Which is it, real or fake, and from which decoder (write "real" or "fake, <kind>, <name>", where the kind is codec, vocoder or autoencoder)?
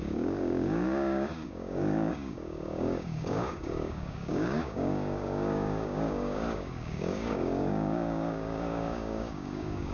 fake, codec, DAC